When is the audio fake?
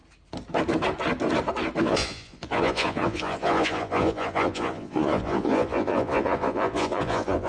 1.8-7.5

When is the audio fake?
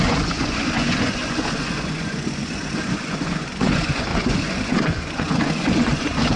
0.0-6.4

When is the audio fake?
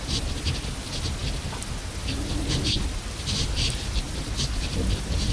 none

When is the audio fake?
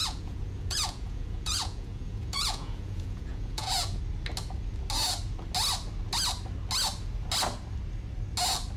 0.0-4.0